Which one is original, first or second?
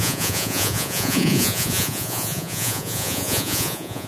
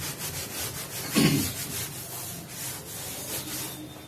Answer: second